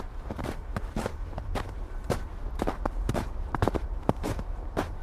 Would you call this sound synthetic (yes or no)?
yes